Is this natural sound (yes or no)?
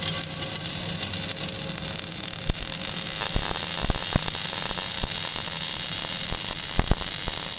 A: yes